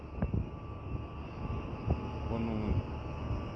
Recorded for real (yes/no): yes